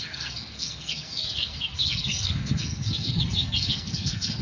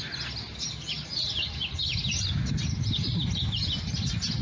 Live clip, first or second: second